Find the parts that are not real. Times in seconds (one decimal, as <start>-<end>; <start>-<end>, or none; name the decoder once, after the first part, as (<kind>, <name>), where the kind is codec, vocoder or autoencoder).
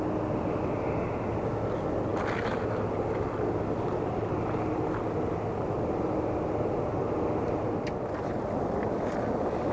none